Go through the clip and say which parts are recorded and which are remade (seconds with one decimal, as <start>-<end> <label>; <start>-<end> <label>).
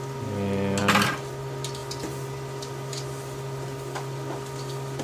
0.0-0.8 recorded; 0.8-1.3 remade; 1.3-1.8 recorded; 1.8-5.0 remade